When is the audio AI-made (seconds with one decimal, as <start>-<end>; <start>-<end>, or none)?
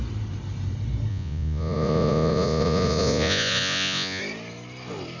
1.1-4.2